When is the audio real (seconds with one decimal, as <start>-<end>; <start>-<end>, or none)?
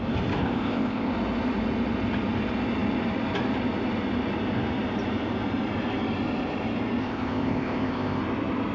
0.0-0.4; 1.1-7.0; 8.2-8.7